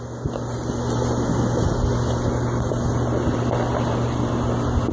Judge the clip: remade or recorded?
recorded